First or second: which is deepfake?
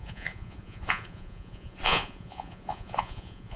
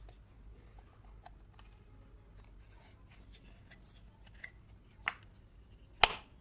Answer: first